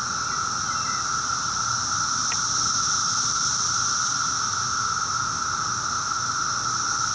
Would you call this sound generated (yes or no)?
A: no